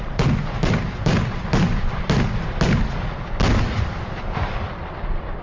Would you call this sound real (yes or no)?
yes